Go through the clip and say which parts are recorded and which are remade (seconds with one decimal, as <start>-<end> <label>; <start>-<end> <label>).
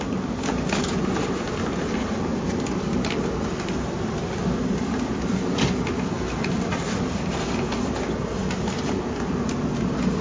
0.0-10.2 recorded